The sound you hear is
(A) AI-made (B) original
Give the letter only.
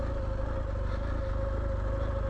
B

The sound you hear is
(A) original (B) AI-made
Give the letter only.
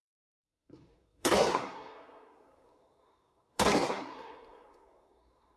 B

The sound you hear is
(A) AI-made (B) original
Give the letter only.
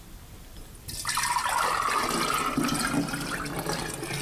B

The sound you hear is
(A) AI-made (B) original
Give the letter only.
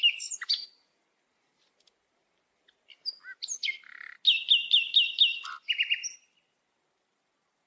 B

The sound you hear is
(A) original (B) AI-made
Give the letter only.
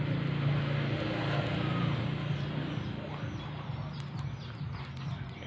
A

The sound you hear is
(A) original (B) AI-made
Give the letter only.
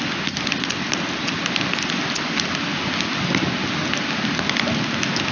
A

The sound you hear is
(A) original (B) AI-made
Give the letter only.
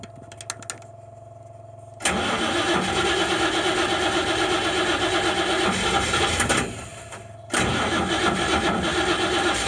A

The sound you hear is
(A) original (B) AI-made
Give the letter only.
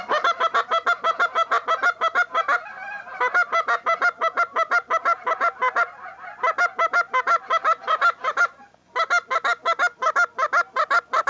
A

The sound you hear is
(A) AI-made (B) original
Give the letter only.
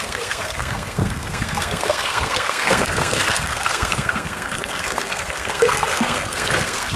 A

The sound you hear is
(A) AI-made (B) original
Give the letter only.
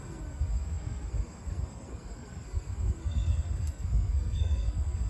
A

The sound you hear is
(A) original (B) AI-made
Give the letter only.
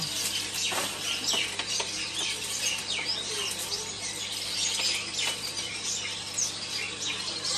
A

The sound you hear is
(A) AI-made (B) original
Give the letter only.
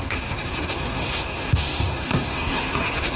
A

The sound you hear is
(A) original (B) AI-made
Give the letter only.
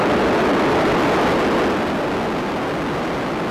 A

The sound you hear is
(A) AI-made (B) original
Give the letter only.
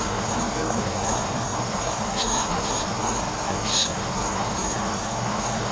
A